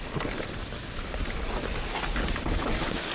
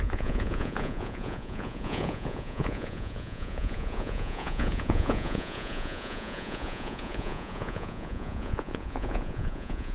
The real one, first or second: first